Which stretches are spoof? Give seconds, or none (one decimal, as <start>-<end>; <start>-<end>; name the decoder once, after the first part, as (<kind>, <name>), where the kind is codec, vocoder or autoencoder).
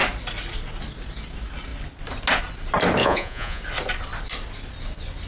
3.0-3.6 (vocoder, Vocos)